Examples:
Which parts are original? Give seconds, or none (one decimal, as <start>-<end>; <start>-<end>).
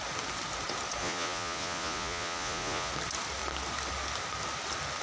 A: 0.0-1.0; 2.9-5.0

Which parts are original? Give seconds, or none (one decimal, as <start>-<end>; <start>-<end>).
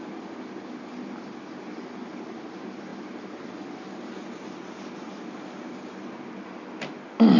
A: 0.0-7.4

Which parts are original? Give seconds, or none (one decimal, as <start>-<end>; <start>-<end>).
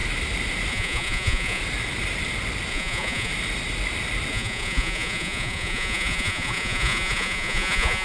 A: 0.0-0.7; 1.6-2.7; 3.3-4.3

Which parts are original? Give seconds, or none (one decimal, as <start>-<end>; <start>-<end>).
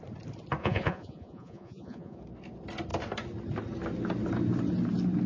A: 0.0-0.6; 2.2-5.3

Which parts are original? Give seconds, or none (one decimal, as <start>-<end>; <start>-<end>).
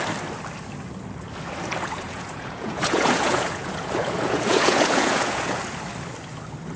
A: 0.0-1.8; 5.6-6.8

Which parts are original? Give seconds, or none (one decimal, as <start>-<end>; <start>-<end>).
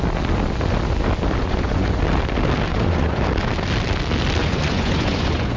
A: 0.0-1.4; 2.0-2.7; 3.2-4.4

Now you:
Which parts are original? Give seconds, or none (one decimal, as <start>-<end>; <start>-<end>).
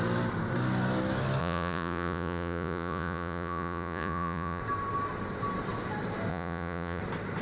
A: 0.0-1.4; 4.6-6.3; 7.0-7.4